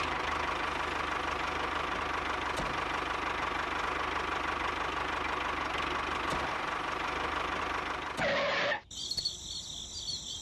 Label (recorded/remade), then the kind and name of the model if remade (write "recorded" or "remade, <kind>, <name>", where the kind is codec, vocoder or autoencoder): recorded